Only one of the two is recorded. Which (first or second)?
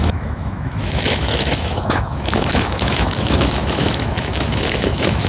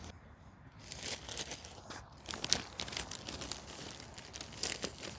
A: second